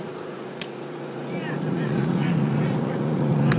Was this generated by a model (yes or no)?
yes